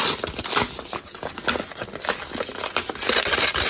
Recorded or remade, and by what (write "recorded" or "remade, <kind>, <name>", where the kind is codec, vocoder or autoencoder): recorded